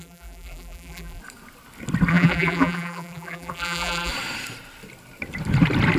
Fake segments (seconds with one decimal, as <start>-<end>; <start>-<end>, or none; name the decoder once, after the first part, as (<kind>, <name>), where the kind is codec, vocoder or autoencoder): 0.0-1.2 (vocoder, BigVGAN v2); 2.1-4.1